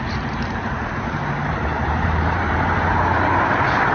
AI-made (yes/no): yes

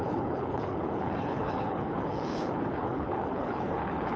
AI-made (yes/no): yes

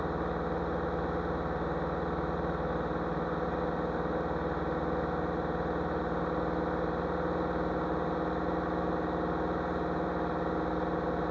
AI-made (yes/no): no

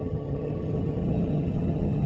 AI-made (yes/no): yes